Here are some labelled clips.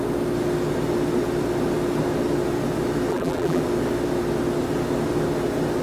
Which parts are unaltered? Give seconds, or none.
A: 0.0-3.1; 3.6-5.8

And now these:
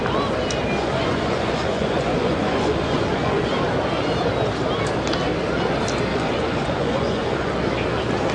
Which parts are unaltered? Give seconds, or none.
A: 0.0-0.8; 3.4-6.1; 7.5-8.3

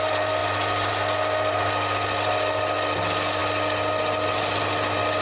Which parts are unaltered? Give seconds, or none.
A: 0.0-5.2

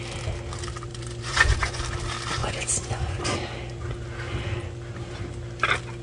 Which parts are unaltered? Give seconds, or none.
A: 0.0-0.9; 1.8-2.4; 3.2-6.0

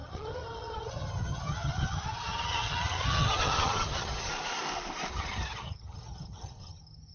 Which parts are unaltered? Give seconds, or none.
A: 4.3-5.1